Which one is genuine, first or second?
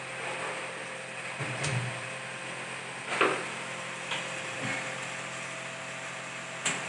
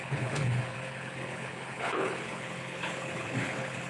first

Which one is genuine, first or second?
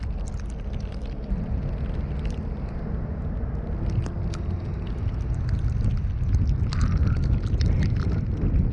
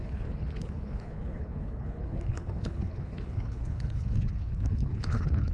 first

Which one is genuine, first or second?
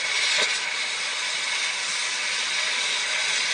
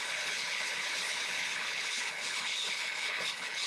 first